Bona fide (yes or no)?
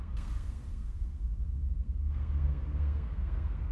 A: no